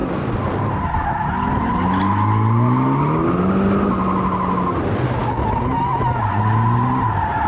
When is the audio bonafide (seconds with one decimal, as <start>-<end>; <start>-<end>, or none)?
0.0-7.5